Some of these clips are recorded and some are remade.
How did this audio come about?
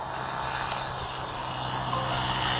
recorded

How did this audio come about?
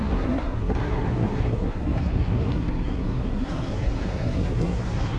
remade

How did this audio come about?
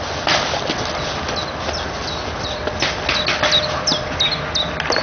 recorded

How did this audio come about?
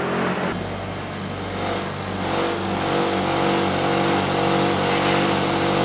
recorded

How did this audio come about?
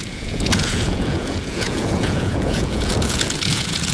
remade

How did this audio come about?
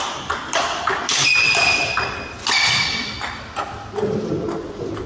recorded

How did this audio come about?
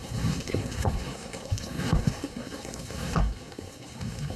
remade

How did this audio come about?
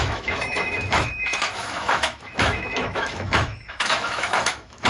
remade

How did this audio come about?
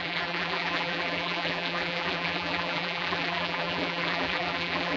remade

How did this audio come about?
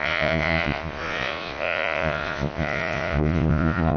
remade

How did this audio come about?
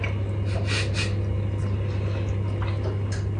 recorded